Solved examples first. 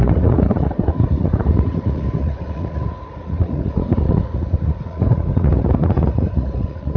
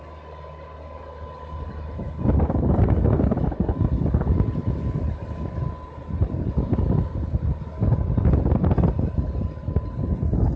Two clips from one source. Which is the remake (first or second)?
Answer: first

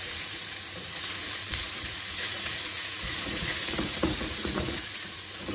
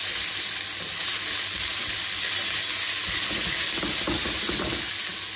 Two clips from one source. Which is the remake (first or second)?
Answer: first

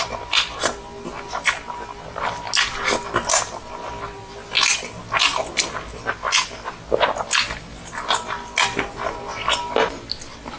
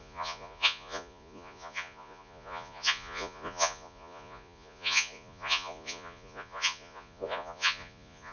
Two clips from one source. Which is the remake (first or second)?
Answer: second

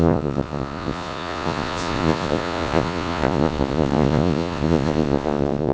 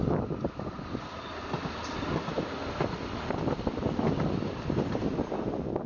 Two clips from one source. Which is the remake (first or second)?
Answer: first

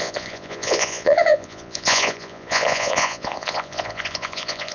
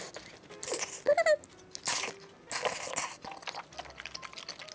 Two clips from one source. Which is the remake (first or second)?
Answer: first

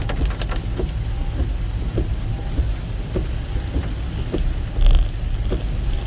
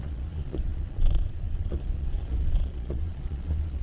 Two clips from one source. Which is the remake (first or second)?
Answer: second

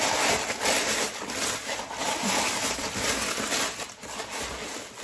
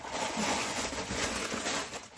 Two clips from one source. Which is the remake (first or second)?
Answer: second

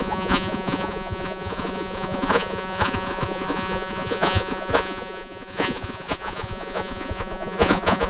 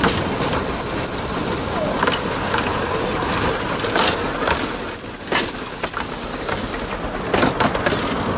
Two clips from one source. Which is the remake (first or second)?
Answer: first